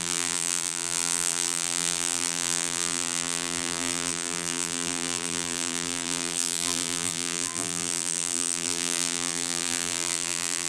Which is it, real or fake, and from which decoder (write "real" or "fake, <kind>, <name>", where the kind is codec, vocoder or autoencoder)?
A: fake, vocoder, BigVGAN v2